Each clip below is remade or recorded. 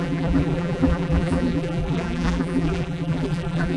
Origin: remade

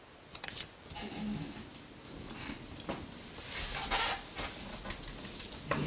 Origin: recorded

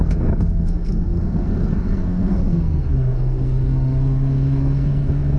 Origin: remade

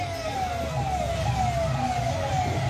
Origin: recorded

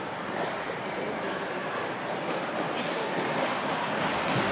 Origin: recorded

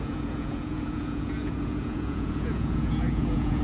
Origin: remade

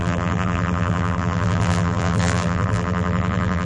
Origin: remade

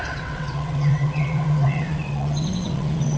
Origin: remade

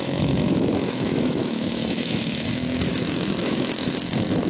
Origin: remade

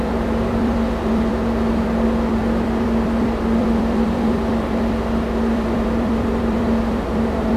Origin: remade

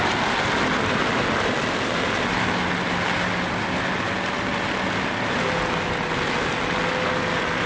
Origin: recorded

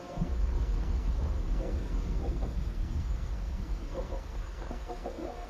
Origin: remade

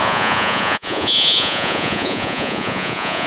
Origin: remade